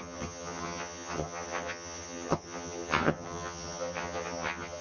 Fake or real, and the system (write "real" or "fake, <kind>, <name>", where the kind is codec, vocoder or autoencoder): fake, vocoder, HiFi-GAN